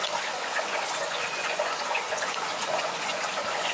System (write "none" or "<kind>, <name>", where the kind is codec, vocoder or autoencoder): vocoder, Vocos